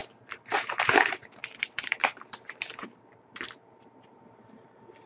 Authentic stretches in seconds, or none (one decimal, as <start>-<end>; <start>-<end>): none